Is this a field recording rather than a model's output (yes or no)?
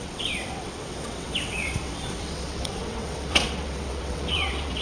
no